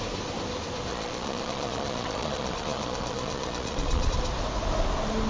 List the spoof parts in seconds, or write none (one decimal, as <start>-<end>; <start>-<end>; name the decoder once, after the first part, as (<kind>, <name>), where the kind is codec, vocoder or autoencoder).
0.9-4.1 (vocoder, Vocos)